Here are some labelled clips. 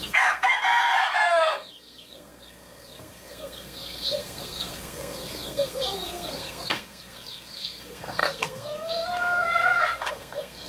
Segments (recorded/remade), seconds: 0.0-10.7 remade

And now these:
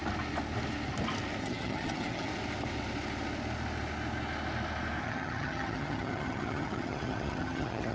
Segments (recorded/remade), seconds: 0.0-1.4 recorded; 1.4-2.3 remade; 2.3-5.0 recorded; 5.0-7.9 remade

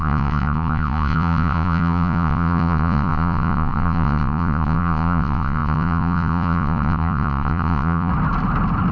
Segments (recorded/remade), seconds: 0.0-8.1 remade; 8.1-8.9 recorded

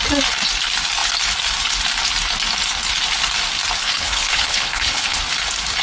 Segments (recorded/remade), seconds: 0.0-3.8 recorded; 3.8-5.2 remade; 5.2-5.8 recorded

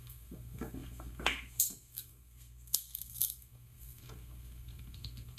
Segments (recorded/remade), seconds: 0.0-5.4 remade

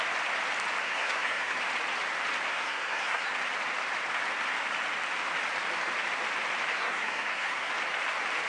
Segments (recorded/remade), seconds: 0.0-0.8 recorded; 0.8-1.6 remade; 1.6-2.5 recorded; 2.5-3.3 remade; 3.3-6.7 recorded; 6.7-7.7 remade; 7.7-8.5 recorded

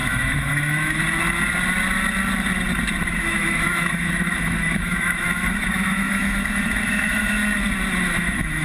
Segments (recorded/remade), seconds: 0.0-1.0 remade; 1.0-3.1 recorded; 3.1-7.4 remade; 7.4-8.0 recorded; 8.0-8.6 remade